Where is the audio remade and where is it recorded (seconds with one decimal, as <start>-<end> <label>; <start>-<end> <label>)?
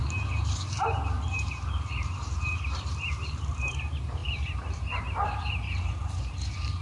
0.0-6.8 remade